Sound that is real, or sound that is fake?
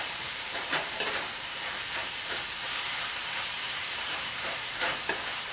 fake